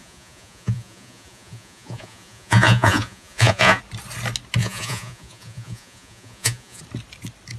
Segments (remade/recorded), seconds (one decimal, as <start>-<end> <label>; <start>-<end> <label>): 0.0-3.8 remade; 3.8-4.6 recorded; 4.6-6.8 remade; 6.8-7.6 recorded